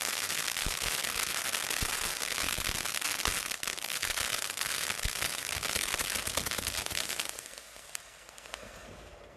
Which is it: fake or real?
fake